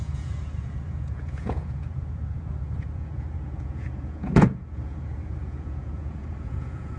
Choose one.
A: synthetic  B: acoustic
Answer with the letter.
A